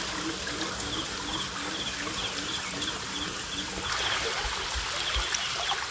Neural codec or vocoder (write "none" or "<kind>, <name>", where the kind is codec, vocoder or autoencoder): none